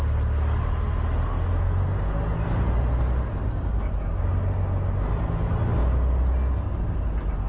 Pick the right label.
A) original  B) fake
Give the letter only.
A